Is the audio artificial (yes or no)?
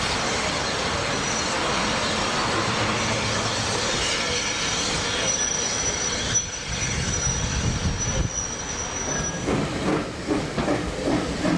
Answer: no